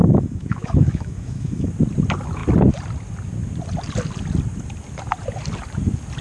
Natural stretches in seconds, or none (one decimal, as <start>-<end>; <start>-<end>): 1.7-6.2